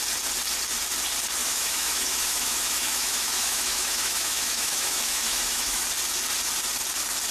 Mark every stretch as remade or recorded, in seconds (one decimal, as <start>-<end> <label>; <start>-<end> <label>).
0.0-1.4 recorded; 1.4-5.8 remade; 5.8-7.3 recorded